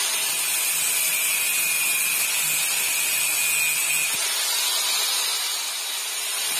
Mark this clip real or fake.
real